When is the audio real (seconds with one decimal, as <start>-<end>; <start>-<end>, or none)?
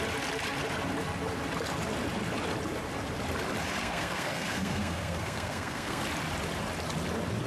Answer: 0.0-3.8; 6.0-7.5